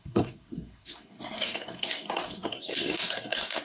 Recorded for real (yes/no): no